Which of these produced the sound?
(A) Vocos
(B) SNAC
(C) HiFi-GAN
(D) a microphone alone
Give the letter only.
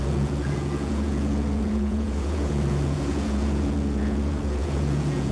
A